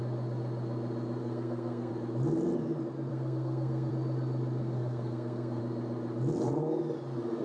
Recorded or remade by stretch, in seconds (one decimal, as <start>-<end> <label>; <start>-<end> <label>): 0.0-1.2 recorded; 1.2-1.9 remade; 1.9-3.1 recorded; 3.1-3.9 remade; 3.9-4.6 recorded; 4.6-5.6 remade; 5.6-7.4 recorded